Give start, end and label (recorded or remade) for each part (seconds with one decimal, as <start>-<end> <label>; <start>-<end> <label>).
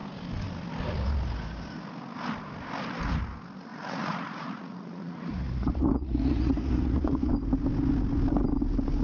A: 0.0-3.7 recorded; 3.7-7.3 remade; 7.3-9.0 recorded